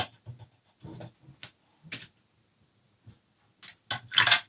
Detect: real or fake real